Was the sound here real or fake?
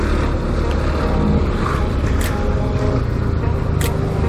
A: real